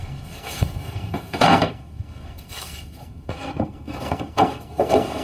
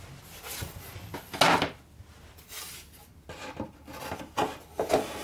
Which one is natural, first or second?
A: second